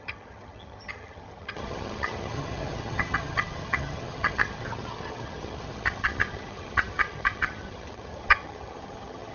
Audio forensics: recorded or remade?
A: remade